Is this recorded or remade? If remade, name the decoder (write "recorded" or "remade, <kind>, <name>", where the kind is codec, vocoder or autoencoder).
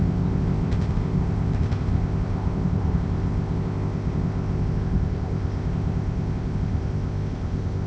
remade, codec, ZipCodec